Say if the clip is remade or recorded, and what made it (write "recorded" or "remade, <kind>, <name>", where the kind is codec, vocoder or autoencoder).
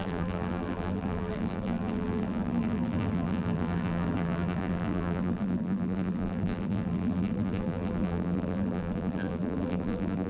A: remade, vocoder, BigVGAN v2